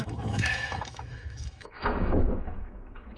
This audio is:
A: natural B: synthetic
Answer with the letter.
B